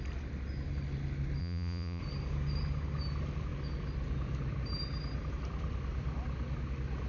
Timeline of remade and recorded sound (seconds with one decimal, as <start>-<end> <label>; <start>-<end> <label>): 0.0-1.4 recorded; 1.4-2.0 remade; 2.0-7.1 recorded